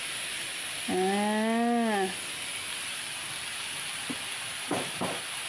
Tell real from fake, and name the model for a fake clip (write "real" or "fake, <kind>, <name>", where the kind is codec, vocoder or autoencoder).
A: real